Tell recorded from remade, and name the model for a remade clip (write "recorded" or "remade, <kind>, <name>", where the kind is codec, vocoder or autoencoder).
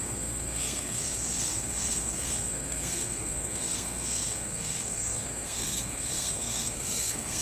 remade, codec, SNAC